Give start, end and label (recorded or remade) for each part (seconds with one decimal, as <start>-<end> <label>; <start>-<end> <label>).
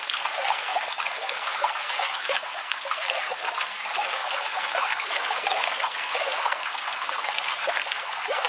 0.0-8.5 remade